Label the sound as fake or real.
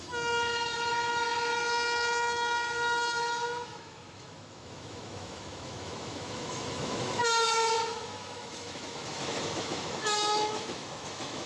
fake